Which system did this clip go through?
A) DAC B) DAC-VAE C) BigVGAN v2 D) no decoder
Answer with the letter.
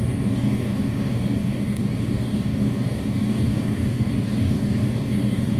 A